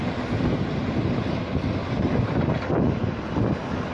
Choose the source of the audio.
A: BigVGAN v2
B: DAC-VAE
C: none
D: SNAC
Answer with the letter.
C